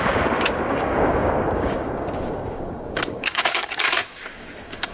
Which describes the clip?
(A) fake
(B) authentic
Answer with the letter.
A